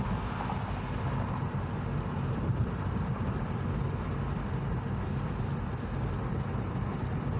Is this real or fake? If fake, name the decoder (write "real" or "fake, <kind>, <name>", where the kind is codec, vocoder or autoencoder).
real